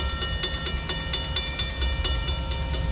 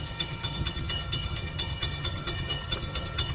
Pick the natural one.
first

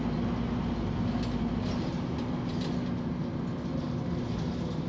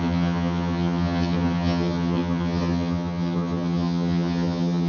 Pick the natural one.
first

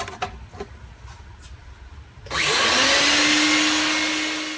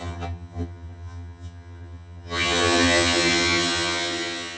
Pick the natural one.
first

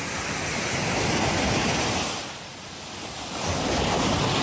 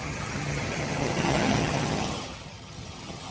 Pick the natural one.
first